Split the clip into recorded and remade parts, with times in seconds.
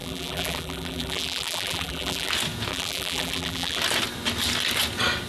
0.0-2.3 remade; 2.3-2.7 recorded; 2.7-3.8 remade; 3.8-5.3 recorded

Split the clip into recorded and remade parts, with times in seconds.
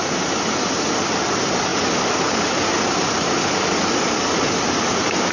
0.0-5.3 recorded